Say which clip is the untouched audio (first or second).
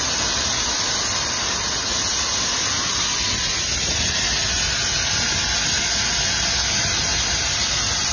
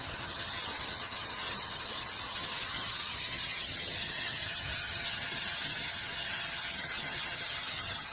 first